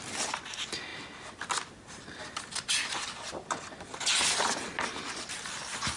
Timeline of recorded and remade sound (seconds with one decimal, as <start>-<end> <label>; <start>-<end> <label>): 0.0-6.0 recorded